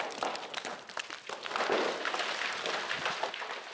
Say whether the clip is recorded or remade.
recorded